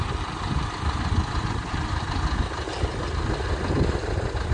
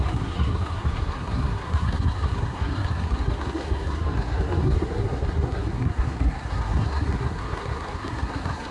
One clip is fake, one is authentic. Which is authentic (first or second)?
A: first